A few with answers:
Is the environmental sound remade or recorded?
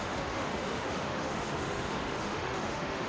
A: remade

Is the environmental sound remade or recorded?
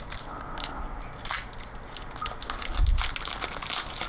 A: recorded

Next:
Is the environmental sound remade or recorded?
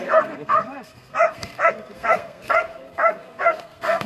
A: remade